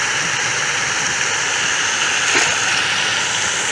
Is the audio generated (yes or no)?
no